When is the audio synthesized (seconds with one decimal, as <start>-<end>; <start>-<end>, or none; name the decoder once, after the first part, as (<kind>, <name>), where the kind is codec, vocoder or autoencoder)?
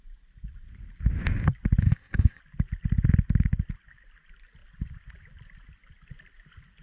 1.8-2.4 (codec, ZipCodec)